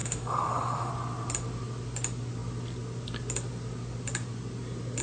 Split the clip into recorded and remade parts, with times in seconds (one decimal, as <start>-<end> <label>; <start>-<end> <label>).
0.0-0.9 remade; 0.9-5.0 recorded